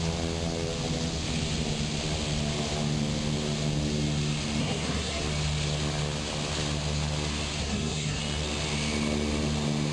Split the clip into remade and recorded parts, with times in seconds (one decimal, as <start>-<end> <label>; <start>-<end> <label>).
0.0-4.6 recorded; 4.6-5.2 remade; 5.2-7.6 recorded; 7.6-8.2 remade; 8.2-9.9 recorded